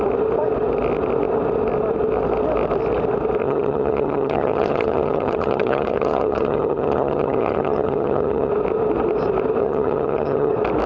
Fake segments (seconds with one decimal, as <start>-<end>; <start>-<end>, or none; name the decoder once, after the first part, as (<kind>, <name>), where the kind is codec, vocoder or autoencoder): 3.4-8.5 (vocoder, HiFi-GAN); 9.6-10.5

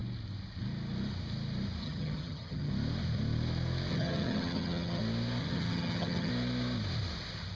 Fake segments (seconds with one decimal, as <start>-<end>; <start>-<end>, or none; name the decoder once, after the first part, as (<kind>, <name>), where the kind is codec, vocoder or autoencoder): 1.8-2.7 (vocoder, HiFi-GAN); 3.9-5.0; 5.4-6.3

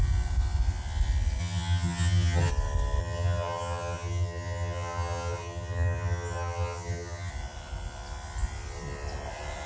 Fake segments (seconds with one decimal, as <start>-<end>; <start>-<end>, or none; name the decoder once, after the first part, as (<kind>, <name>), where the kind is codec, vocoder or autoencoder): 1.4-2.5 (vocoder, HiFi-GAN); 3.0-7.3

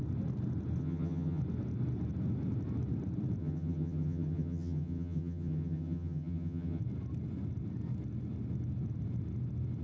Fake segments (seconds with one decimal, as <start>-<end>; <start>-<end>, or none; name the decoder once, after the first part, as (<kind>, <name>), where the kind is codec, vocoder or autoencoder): 0.8-1.4 (vocoder, HiFi-GAN); 3.4-6.8

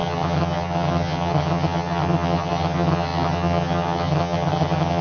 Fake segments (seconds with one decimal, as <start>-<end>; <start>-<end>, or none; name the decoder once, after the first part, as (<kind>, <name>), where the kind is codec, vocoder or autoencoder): 0.0-5.0 (vocoder, HiFi-GAN)